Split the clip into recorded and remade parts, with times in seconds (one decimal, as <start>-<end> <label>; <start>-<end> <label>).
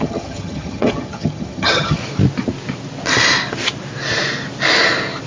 0.0-2.0 remade; 2.0-5.3 recorded